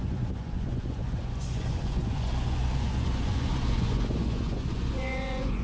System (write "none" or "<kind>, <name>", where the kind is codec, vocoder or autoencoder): vocoder, Vocos